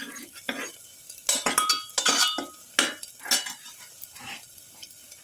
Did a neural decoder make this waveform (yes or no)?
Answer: no